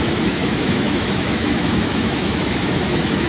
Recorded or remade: remade